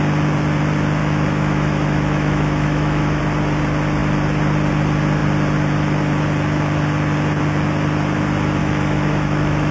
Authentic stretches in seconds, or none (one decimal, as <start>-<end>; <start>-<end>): 0.0-1.0; 3.2-8.6